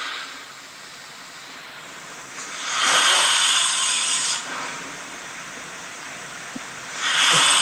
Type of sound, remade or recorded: remade